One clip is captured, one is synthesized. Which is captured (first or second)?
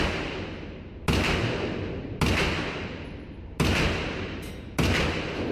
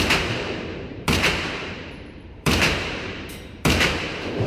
first